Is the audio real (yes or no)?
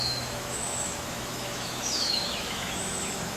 no